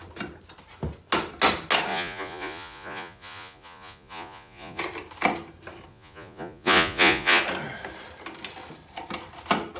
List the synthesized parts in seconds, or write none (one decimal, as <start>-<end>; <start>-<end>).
1.9-4.8; 5.9-7.4